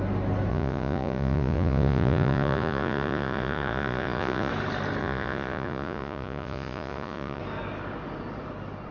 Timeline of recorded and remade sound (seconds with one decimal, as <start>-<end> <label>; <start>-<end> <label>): 0.0-0.5 recorded; 0.5-4.5 remade; 4.5-5.0 recorded; 5.0-7.4 remade; 7.4-8.9 recorded